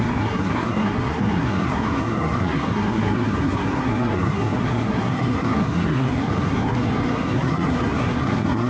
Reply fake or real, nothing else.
fake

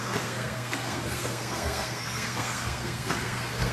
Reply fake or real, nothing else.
fake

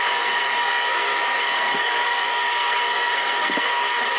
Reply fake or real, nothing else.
fake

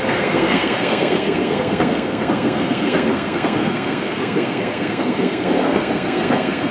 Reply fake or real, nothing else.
fake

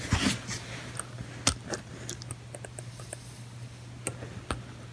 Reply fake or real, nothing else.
real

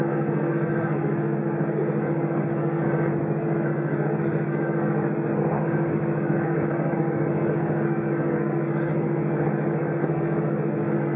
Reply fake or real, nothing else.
fake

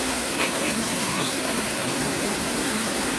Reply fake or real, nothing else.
fake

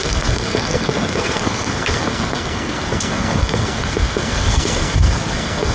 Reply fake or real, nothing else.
fake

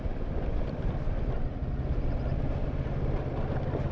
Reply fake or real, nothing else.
real